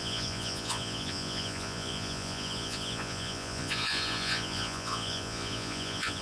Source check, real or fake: fake